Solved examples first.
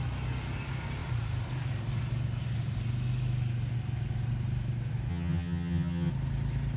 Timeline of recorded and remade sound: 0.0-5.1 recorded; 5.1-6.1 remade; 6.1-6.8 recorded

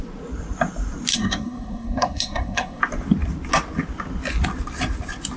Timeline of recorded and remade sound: 0.0-1.1 recorded; 1.1-2.8 remade; 2.8-5.4 recorded

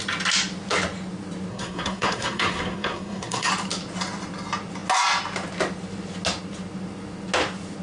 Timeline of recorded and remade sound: 0.0-1.5 recorded; 1.5-3.5 remade; 3.5-7.8 recorded

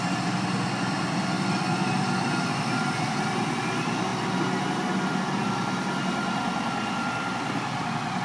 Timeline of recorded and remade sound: 0.0-8.2 recorded

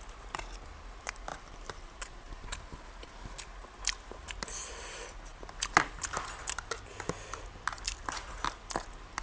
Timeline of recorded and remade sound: 0.0-1.3 recorded; 1.3-3.1 remade; 3.1-9.2 recorded